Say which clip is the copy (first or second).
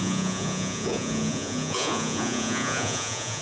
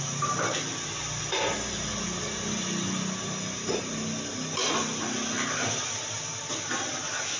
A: first